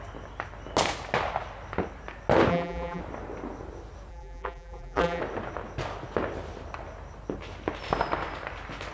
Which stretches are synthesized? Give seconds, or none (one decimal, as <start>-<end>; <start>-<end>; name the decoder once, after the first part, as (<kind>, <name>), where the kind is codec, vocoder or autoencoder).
2.5-3.0 (vocoder, BigVGAN v2); 4.1-5.2